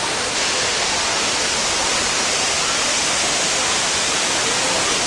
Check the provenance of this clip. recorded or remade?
recorded